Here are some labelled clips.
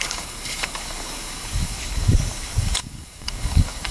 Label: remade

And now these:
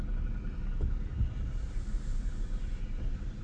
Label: recorded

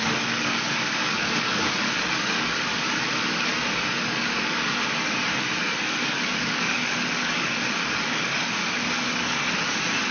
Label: remade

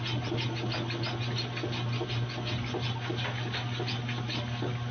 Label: recorded